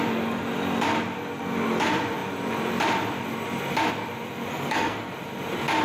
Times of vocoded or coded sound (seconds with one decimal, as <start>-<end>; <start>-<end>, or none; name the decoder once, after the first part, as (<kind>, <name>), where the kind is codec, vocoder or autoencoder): 4.5-5.1 (codec, SNAC)